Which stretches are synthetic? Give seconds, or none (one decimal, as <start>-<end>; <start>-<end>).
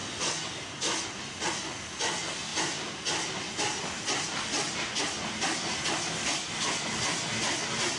none